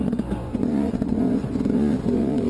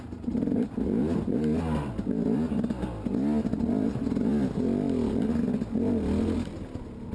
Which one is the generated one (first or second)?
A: first